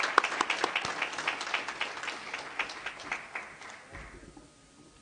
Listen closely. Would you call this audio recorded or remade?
recorded